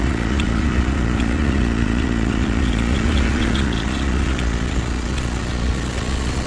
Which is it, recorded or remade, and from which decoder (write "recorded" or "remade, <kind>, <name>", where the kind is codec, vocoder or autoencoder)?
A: remade, vocoder, Vocos